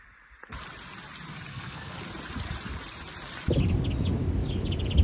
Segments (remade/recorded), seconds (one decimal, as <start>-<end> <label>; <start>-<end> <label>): 0.0-1.5 recorded; 1.5-2.0 remade; 2.0-5.0 recorded